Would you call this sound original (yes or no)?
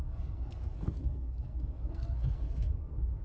no